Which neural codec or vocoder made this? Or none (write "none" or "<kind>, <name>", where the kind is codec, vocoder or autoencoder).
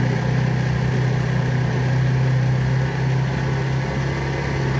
none